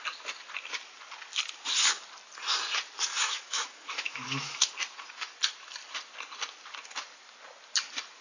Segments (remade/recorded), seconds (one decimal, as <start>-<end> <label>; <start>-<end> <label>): 0.0-3.1 recorded; 3.1-4.7 remade; 4.7-8.2 recorded